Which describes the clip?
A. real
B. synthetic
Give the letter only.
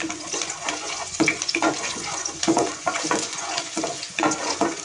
B